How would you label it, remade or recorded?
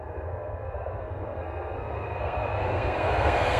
remade